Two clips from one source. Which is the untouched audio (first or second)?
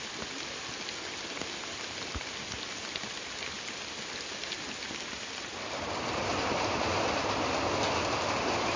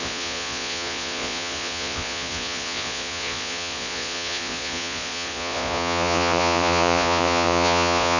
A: first